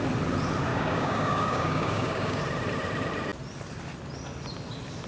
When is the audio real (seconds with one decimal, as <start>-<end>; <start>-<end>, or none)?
0.0-0.7; 2.4-5.1